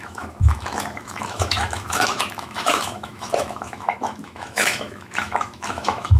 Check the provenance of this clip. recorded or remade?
remade